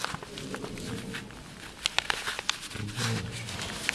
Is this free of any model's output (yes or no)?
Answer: yes